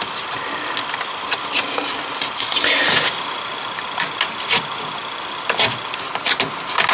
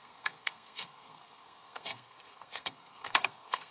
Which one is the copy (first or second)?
second